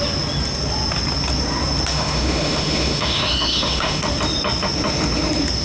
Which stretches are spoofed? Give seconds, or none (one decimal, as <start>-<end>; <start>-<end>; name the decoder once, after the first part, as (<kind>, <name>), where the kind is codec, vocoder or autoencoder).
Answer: 1.9-4.0 (autoencoder, DAC-VAE)